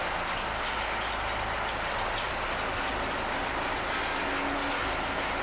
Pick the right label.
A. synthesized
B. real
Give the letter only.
B